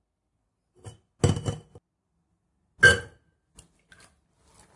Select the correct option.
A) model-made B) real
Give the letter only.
B